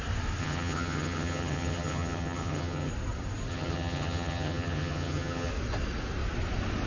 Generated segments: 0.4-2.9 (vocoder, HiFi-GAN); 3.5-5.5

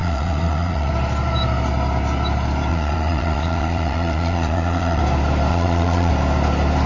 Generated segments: 0.0-0.9 (vocoder, Vocos); 2.7-5.0; 5.5-6.1

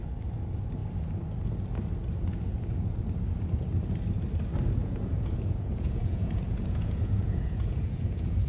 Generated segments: 4.8-8.5 (vocoder, Vocos)